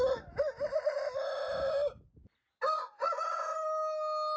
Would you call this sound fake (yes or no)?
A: no